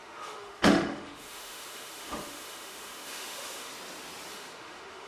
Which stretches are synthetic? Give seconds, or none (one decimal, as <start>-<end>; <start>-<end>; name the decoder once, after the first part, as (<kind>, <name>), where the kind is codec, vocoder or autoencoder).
0.0-3.7 (autoencoder, DAC-VAE); 4.3-5.1

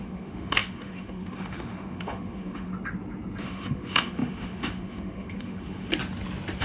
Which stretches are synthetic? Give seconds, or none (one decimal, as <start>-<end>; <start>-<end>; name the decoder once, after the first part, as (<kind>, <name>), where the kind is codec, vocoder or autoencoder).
0.0-2.7 (autoencoder, DAC-VAE); 3.4-5.9

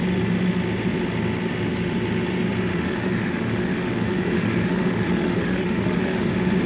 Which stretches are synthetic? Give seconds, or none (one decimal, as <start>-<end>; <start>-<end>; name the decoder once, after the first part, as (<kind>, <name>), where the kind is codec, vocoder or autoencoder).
2.7-6.3 (autoencoder, DAC-VAE)

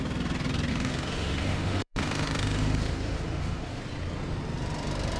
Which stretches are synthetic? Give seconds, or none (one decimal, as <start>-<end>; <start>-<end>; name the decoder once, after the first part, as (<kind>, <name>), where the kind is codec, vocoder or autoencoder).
0.7-3.8 (autoencoder, DAC-VAE)

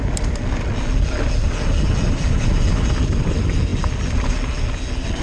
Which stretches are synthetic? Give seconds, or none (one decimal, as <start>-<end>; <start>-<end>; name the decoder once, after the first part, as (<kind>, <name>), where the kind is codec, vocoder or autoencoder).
none